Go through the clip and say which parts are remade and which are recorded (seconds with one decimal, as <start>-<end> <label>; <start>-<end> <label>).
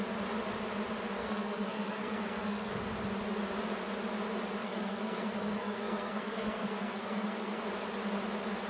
0.0-1.2 recorded; 1.2-2.7 remade; 2.7-4.6 recorded; 4.6-7.6 remade; 7.6-8.7 recorded